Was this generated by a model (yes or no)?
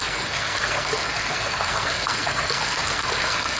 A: yes